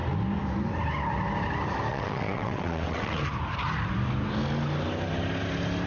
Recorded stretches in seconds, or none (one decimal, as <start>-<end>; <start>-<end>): 0.0-1.9; 3.2-5.9